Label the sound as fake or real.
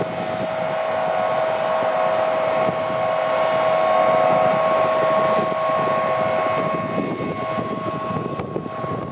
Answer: real